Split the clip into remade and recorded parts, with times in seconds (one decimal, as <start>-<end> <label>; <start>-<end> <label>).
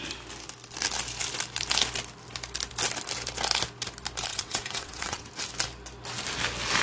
0.0-4.3 recorded; 4.3-5.3 remade; 5.3-6.8 recorded